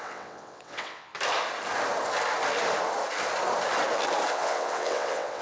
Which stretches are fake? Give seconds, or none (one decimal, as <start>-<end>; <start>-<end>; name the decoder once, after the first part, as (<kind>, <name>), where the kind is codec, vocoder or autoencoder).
0.0-1.1 (vocoder, WaveNeXt); 4.3-5.4